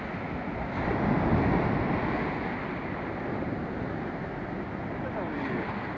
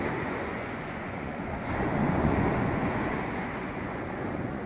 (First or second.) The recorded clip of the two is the first